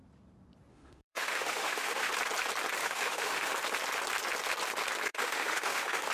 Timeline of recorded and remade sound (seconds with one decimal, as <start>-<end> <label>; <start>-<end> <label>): 0.0-0.7 recorded; 0.7-2.1 remade; 2.1-2.8 recorded; 2.8-3.5 remade; 3.5-5.1 recorded; 5.1-6.1 remade